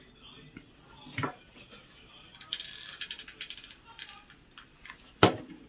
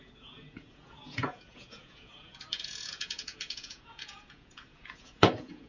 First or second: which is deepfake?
second